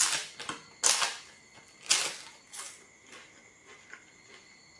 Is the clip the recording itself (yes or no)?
yes